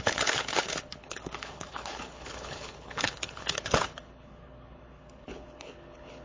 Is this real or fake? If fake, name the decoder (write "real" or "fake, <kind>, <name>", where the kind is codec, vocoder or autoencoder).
fake, codec, HILCodec